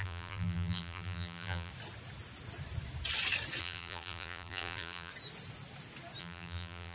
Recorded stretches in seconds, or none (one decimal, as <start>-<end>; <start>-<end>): 1.7-3.6; 5.1-6.2